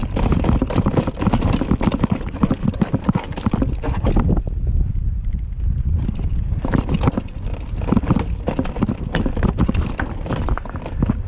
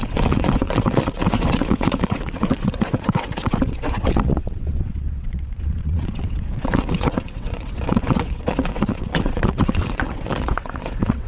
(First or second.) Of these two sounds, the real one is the first